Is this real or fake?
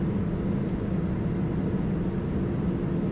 real